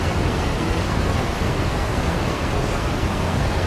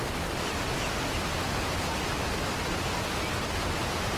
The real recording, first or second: second